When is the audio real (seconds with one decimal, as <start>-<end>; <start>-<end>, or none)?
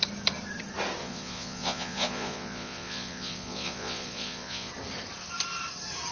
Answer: 0.0-1.0; 4.7-6.1